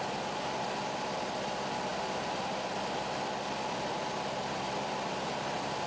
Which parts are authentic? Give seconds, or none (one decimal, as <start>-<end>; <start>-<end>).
0.0-5.9